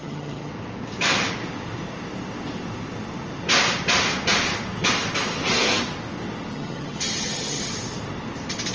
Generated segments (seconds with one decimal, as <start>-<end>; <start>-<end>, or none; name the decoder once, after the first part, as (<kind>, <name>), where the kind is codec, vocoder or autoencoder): 0.0-0.5 (vocoder, HiFi-GAN); 6.5-7.7